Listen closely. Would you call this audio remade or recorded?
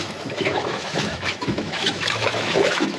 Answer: remade